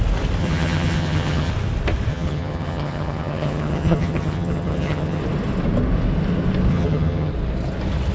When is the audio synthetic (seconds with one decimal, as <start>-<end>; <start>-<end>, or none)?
0.4-1.5; 2.1-5.2; 6.7-7.3